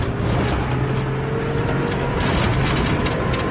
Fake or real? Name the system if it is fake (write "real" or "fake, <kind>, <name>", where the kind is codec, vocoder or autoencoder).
real